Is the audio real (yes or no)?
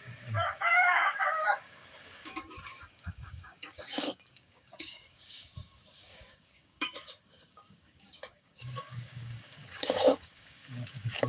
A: no